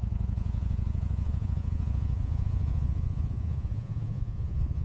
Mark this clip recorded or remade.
remade